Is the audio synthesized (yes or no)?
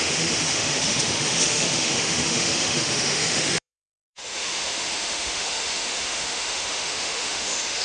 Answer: yes